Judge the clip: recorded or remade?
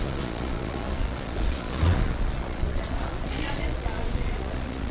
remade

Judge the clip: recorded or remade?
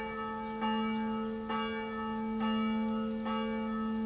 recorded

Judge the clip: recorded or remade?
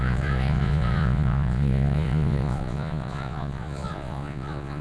remade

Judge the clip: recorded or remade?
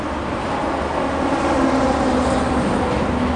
recorded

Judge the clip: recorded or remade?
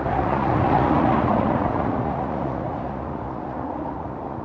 remade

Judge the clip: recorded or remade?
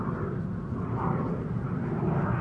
recorded